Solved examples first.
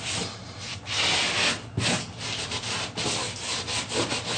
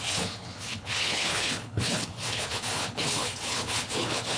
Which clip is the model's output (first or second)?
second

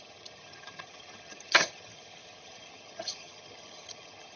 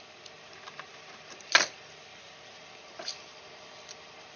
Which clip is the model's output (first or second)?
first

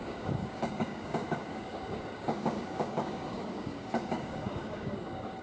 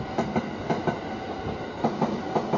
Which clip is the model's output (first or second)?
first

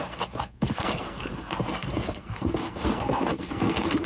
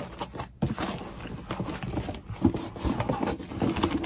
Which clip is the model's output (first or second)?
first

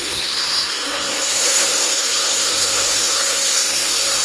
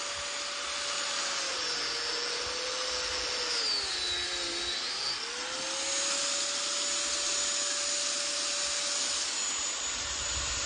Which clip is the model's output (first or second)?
first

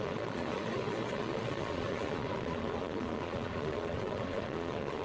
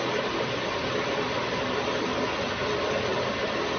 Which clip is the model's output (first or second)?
first